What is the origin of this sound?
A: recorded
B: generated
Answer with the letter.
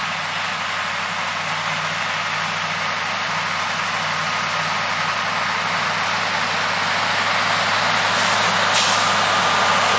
A